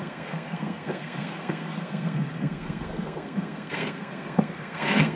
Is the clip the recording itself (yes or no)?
no